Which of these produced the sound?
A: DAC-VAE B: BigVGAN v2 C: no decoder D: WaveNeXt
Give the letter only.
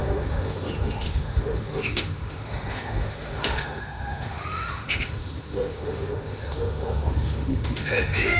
A